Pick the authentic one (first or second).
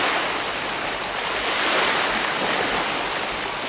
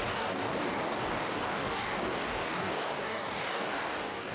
first